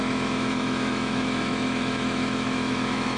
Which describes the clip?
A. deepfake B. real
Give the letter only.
A